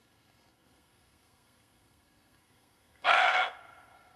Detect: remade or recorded remade